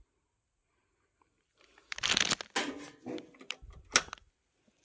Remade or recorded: recorded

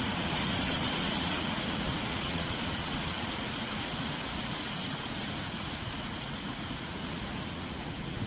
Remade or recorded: remade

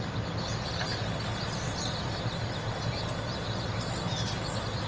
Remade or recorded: recorded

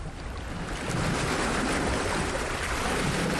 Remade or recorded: recorded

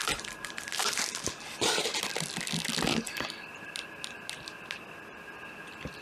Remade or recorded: recorded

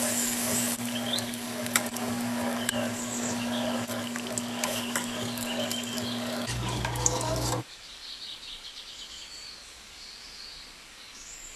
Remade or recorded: remade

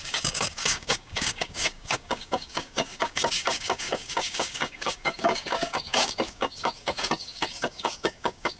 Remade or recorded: remade